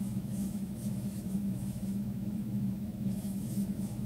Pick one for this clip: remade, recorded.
remade